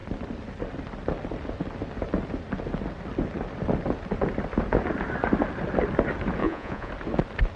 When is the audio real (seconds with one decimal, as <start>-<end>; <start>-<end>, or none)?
0.0-6.4; 6.9-7.6